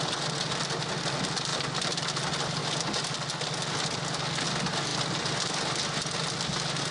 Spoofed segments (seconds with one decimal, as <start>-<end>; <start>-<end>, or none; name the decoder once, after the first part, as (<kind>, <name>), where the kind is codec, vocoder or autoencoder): 1.5-2.2 (vocoder, BigVGAN v2)